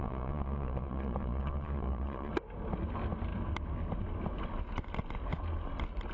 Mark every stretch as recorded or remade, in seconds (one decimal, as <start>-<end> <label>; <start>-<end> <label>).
0.0-2.3 remade; 2.3-6.1 recorded